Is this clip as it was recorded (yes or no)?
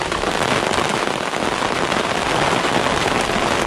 no